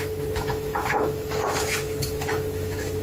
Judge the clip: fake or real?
fake